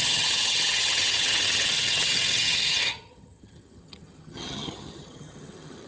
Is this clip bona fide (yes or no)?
no